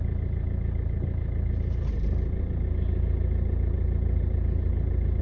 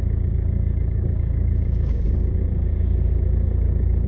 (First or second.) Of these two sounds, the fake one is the second